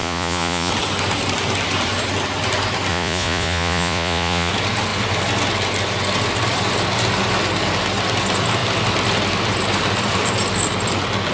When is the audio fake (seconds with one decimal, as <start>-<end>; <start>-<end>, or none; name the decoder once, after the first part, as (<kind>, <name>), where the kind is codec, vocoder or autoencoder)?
0.0-0.7 (vocoder, Vocos); 2.9-4.5